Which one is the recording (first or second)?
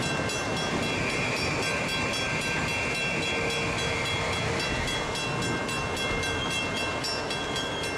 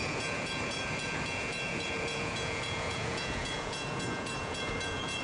first